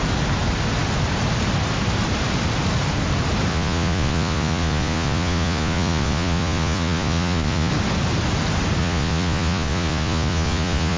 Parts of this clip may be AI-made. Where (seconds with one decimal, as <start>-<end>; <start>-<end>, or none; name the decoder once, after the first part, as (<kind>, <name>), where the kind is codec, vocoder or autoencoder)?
3.5-7.7 (vocoder, Vocos); 8.8-11.0